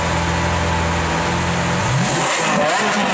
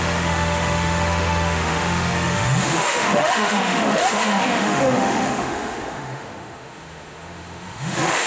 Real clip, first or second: first